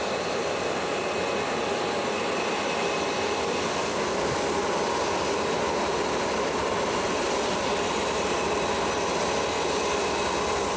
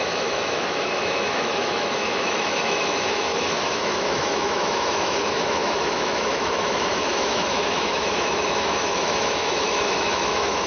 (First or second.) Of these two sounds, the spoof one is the second